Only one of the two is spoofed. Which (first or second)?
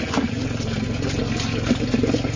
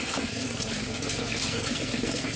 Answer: second